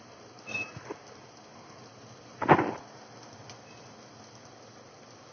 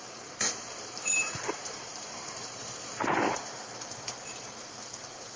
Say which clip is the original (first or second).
first